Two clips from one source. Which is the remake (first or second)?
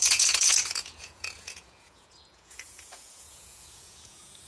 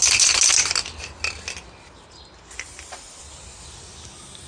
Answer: first